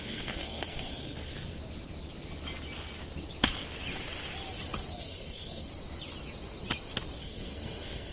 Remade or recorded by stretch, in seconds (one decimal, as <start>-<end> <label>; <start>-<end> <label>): 0.0-1.6 remade; 1.6-4.9 recorded; 4.9-5.7 remade; 5.7-7.2 recorded; 7.2-8.1 remade